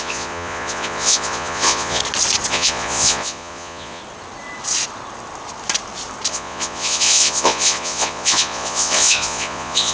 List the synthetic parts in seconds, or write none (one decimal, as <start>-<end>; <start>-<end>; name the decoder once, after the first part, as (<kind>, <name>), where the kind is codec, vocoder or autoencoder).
0.0-2.0 (vocoder, Vocos); 2.5-4.0; 6.3-9.9